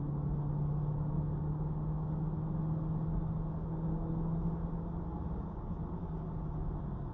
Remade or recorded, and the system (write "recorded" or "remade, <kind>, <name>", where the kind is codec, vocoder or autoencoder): recorded